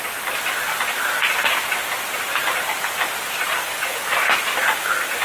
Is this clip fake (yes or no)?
no